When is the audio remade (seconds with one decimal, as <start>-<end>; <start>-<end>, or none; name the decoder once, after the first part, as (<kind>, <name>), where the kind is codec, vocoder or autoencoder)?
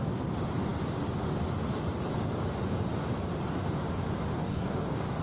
4.4-5.2 (codec, DAC)